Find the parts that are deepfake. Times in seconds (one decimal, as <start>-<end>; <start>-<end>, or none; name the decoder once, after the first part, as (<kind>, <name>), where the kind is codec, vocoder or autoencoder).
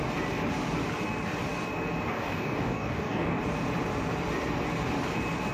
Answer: 2.1-3.4 (codec, DAC)